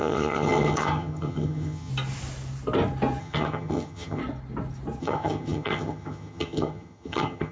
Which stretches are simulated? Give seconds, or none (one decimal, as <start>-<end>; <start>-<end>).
0.0-1.9; 3.2-4.2; 5.0-7.5